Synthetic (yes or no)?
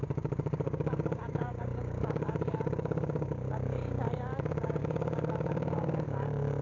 yes